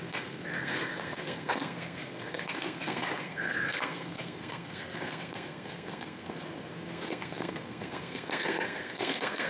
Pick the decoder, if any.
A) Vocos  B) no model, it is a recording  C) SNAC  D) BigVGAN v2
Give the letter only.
C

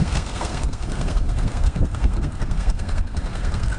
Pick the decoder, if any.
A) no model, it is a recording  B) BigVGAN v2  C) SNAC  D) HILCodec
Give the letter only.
C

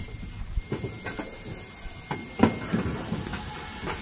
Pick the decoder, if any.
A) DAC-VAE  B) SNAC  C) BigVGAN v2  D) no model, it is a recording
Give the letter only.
D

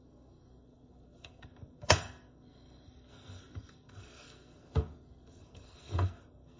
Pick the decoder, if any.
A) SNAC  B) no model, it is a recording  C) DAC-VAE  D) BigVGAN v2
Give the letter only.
A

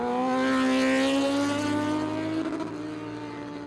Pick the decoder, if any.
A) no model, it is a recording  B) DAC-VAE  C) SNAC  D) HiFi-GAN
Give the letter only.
A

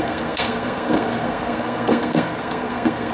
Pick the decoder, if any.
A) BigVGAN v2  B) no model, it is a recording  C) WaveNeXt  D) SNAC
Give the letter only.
D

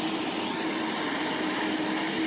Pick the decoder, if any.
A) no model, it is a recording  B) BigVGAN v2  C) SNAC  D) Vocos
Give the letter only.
A